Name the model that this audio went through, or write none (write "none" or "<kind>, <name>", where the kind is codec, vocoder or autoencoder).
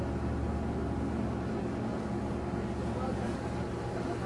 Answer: none